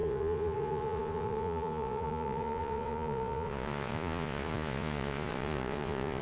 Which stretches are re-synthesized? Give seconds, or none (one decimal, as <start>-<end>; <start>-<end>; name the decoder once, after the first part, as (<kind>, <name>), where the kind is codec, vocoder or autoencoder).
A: 0.0-6.2 (vocoder, Vocos)